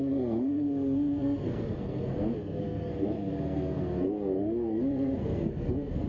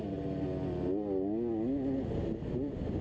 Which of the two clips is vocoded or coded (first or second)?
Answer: first